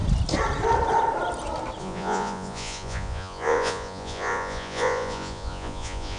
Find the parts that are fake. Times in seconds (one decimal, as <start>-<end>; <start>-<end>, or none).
1.8-6.2